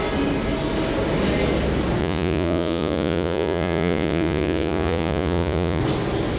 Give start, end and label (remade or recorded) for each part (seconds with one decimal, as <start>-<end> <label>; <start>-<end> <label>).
0.0-2.0 recorded; 2.0-5.8 remade; 5.8-6.4 recorded